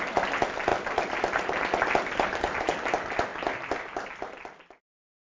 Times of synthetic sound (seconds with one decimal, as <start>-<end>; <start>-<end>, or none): none